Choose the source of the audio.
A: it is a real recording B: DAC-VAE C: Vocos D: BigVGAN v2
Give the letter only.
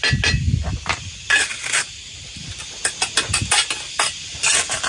A